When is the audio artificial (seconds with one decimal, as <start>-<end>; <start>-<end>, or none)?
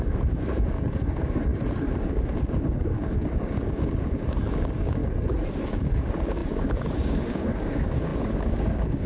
0.0-1.5; 2.0-5.0; 5.5-9.1